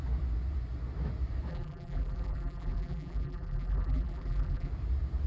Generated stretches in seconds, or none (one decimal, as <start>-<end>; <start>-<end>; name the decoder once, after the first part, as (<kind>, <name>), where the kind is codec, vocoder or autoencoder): 1.5-4.7 (vocoder, BigVGAN v2)